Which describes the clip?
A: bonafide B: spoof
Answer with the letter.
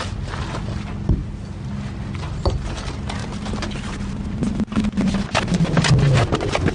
A